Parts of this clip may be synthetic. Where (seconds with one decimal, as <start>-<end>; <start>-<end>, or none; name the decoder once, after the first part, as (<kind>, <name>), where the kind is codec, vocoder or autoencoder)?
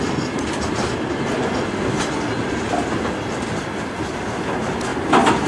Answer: none